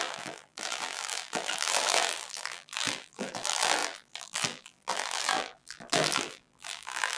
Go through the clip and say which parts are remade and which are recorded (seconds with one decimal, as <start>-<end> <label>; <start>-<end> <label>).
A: 0.0-7.2 remade

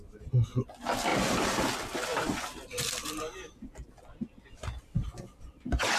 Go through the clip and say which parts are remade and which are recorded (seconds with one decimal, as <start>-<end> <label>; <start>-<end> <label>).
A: 0.0-1.1 recorded; 1.1-1.6 remade; 1.6-2.1 recorded; 2.1-6.0 remade

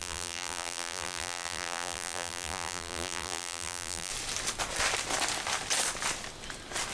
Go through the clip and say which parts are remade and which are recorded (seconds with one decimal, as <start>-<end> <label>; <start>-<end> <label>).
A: 0.0-4.1 remade; 4.1-6.9 recorded

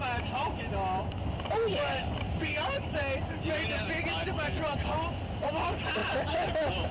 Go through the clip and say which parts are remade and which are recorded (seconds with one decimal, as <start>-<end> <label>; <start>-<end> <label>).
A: 0.0-6.9 recorded

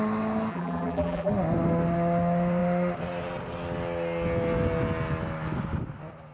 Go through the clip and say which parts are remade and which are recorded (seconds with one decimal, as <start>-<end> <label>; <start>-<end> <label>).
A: 0.0-0.5 recorded; 0.5-1.3 remade; 1.3-6.3 recorded